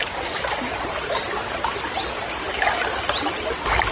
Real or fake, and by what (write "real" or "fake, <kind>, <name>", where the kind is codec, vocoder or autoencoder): real